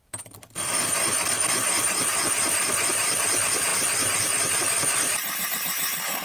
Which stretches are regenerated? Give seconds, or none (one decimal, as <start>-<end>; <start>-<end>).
0.0-3.7; 4.5-6.2